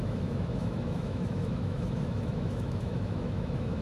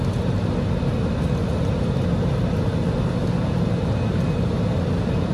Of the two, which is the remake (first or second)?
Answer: first